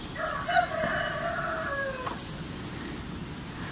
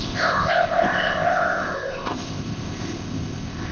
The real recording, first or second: first